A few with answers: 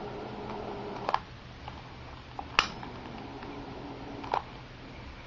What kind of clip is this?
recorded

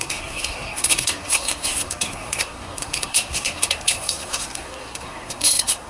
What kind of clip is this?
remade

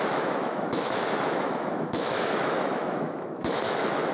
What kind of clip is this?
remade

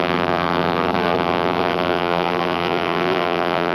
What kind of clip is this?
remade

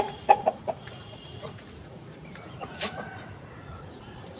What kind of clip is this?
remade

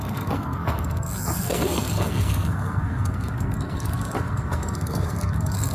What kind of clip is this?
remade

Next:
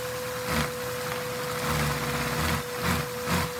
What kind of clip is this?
recorded